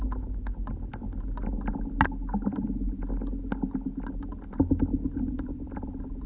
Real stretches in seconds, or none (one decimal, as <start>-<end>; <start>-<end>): 0.0-6.3